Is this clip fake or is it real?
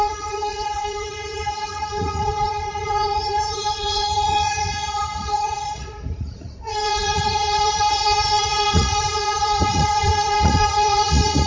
fake